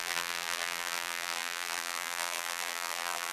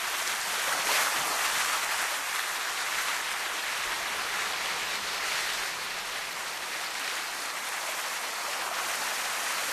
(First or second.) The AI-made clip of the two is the first